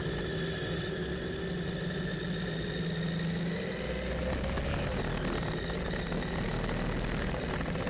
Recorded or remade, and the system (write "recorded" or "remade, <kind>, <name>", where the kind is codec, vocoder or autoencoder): recorded